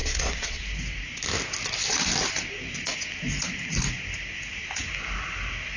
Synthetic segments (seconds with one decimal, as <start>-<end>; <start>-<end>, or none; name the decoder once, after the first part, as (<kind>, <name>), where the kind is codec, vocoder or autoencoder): 0.0-0.6 (vocoder, WaveNeXt)